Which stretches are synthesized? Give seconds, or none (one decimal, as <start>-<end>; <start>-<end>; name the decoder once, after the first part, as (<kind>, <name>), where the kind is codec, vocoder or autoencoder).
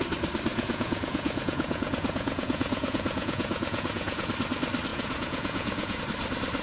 0.5-4.3 (vocoder, Vocos); 4.9-6.0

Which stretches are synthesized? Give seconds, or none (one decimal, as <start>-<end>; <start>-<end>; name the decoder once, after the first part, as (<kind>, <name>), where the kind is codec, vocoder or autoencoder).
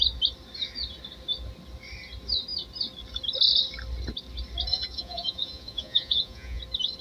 4.7-6.6 (vocoder, Vocos)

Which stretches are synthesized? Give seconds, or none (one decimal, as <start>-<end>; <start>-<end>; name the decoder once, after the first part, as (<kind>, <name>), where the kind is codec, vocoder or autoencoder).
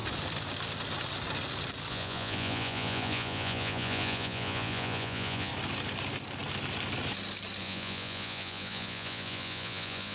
1.9-5.5 (vocoder, Vocos); 7.6-10.1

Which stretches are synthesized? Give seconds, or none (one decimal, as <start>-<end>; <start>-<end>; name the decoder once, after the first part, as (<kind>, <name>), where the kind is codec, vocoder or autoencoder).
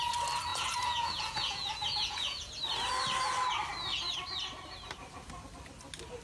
0.5-2.5 (vocoder, Vocos)